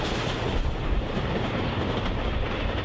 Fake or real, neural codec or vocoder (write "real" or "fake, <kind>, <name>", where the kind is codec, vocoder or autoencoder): fake, vocoder, BigVGAN v2